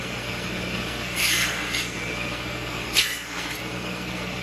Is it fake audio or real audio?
fake